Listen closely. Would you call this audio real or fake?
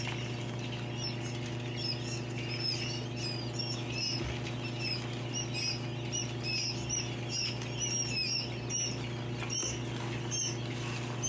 real